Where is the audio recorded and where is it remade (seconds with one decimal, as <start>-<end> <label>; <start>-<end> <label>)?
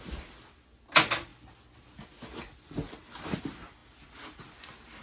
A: 0.0-5.0 recorded